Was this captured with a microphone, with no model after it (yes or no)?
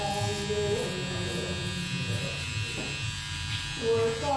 yes